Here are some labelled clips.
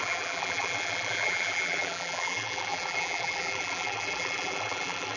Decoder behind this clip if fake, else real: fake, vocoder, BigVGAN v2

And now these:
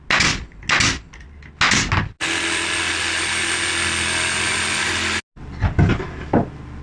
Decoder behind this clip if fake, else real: real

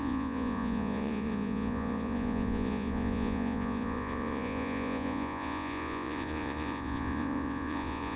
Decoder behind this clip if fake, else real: fake, vocoder, Vocos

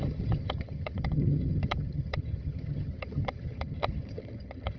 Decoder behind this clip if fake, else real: fake, vocoder, HiFi-GAN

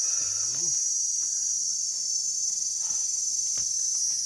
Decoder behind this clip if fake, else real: real